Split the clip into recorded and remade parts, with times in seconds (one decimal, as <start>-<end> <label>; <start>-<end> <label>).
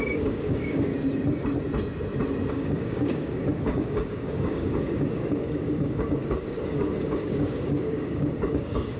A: 0.0-0.9 remade; 0.9-2.5 recorded; 2.5-9.0 remade